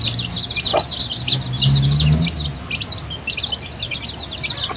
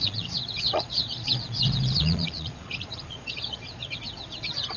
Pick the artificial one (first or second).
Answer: second